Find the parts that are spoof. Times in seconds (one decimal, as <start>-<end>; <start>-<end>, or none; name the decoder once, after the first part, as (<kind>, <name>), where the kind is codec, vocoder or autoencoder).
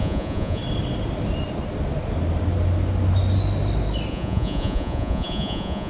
0.0-0.6 (vocoder, Vocos); 4.1-5.9